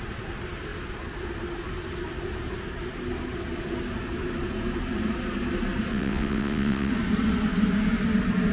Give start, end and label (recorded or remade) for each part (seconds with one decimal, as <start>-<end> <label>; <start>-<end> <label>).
0.0-5.9 recorded; 5.9-6.9 remade; 6.9-8.5 recorded